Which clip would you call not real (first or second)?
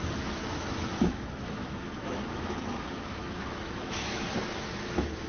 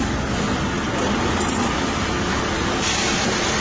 first